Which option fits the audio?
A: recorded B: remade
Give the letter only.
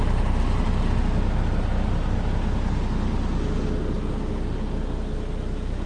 A